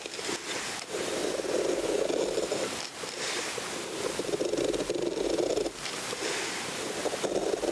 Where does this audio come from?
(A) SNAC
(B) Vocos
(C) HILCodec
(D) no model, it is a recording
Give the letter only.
D